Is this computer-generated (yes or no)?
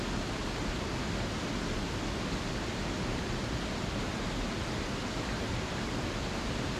no